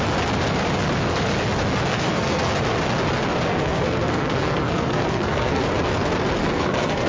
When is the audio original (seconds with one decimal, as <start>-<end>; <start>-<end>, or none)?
0.0-1.9; 2.5-3.5; 5.6-6.4